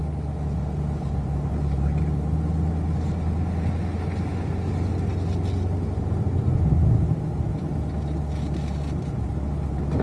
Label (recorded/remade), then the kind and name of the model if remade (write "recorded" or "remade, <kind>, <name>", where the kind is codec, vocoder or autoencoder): recorded